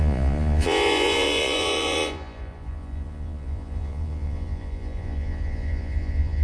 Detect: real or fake fake